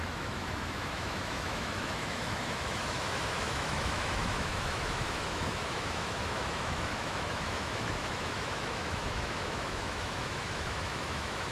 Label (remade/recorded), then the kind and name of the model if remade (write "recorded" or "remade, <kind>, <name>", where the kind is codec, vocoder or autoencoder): remade, autoencoder, DAC-VAE